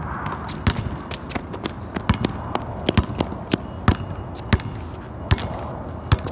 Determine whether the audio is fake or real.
real